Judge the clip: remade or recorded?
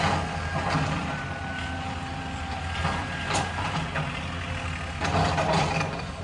recorded